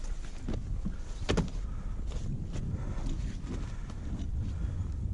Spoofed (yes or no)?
no